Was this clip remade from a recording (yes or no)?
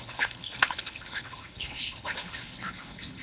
yes